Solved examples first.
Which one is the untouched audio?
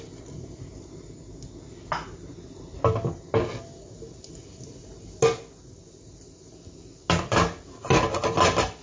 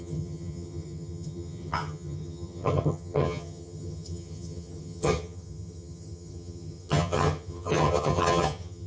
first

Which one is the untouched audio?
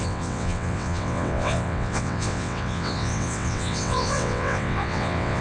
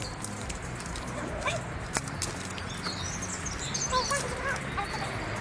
second